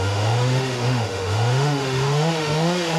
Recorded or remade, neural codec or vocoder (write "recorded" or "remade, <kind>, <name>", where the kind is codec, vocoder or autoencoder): remade, autoencoder, DAC-VAE